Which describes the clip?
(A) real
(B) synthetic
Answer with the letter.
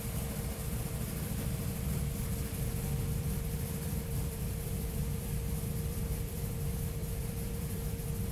B